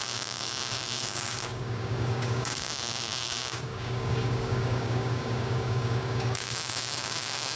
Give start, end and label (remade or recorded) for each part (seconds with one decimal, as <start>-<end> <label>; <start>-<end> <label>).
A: 0.0-7.6 remade